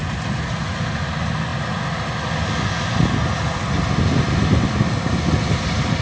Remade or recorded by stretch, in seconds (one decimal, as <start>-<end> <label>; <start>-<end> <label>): 0.0-6.0 recorded